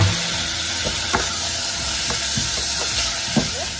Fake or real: real